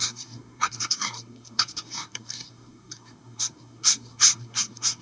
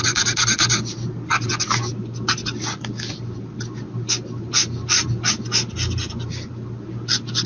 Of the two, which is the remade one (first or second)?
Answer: first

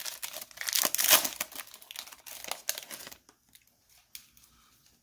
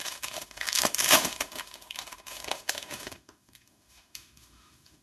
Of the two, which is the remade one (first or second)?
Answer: second